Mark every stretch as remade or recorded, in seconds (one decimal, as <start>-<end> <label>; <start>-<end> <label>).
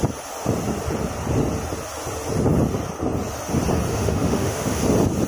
0.0-3.9 recorded; 3.9-4.8 remade; 4.8-5.3 recorded